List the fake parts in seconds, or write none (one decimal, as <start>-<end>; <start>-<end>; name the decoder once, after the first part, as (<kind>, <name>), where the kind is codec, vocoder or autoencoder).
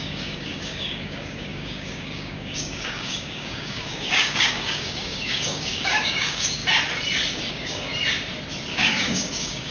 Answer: 0.0-6.6 (codec, DAC); 7.5-7.9; 8.7-9.7